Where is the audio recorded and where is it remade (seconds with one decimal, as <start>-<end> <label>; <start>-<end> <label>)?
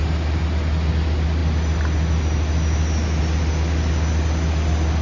0.0-5.0 recorded